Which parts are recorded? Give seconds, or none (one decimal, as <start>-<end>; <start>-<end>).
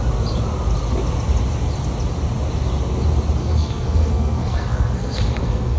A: 0.0-3.4